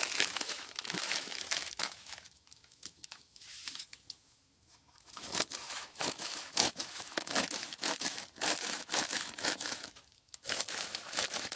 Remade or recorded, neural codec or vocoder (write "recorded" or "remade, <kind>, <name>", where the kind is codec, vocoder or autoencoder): remade, autoencoder, DAC-VAE